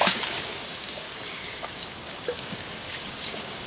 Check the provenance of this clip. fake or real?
fake